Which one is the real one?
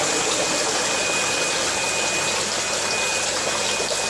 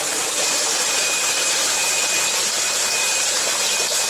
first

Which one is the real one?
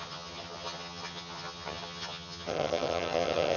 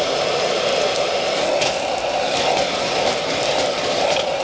second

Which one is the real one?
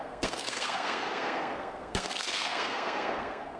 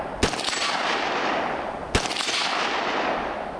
second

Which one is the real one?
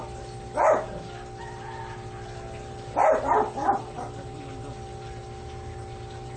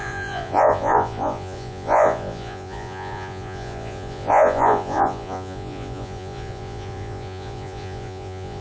first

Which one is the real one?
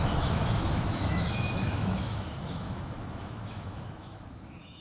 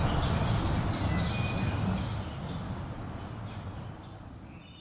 second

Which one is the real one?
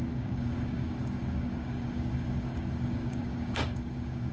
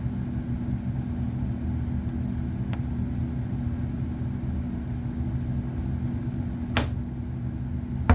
second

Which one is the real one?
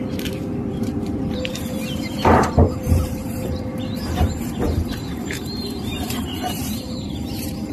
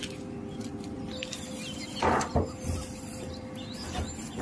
second